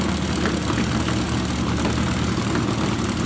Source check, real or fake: real